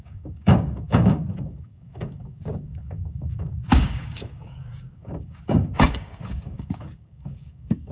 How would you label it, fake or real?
fake